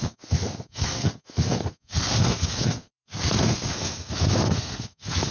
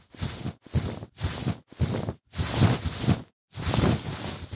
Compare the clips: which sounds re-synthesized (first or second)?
first